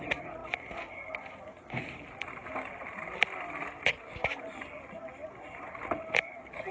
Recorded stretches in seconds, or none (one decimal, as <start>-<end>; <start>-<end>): 0.0-5.2; 6.1-6.7